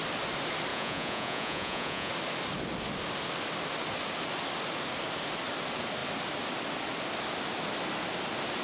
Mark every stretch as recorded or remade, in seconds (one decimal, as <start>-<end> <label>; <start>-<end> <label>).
0.0-0.7 recorded; 0.7-2.1 remade; 2.1-8.6 recorded